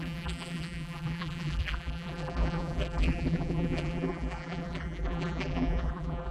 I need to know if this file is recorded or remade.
remade